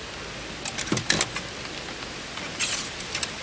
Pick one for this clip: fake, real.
real